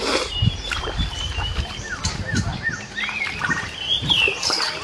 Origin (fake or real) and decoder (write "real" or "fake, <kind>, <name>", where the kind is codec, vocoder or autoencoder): fake, vocoder, BigVGAN v2